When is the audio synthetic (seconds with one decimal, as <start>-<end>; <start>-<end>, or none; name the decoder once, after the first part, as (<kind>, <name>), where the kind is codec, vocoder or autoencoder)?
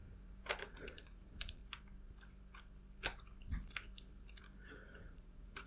0.6-1.6 (vocoder, Vocos); 5.0-5.7